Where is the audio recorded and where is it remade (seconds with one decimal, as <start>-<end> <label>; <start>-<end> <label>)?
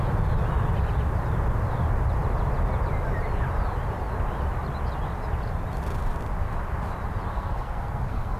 0.0-7.3 recorded; 7.3-8.4 remade